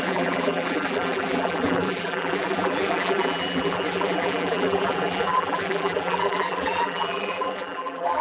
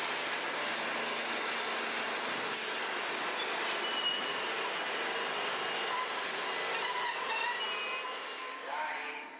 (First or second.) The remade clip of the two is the first